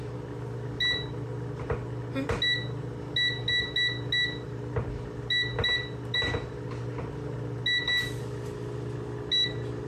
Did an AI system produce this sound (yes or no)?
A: no